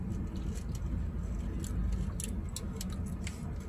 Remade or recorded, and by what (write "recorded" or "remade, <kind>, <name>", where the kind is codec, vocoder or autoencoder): recorded